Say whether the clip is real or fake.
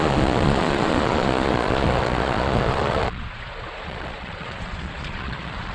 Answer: fake